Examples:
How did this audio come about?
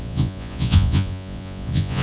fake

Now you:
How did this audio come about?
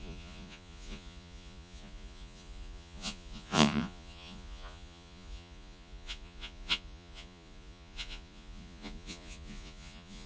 fake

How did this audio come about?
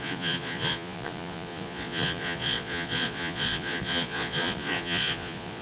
fake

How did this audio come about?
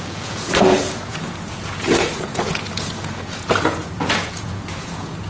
fake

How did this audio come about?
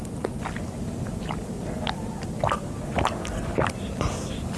real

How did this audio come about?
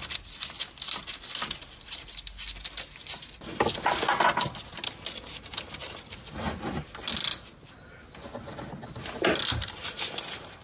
real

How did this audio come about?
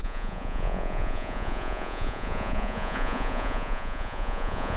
fake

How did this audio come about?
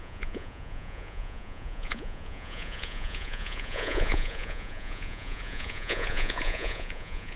fake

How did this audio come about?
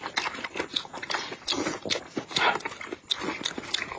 real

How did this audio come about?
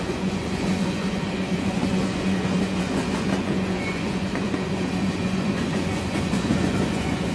fake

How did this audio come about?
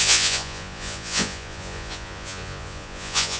fake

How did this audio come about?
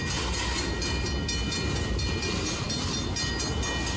real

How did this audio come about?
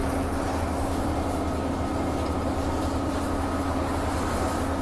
real